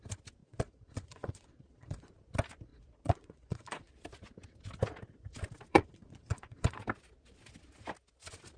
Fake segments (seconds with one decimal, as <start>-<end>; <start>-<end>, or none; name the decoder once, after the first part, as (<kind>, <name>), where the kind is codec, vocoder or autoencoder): 0.4-2.1 (vocoder, Vocos); 2.7-3.9; 5.7-6.8